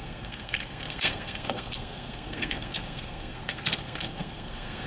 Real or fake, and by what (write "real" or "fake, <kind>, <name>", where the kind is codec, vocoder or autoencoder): fake, codec, SNAC